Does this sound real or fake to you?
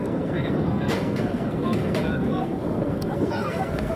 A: fake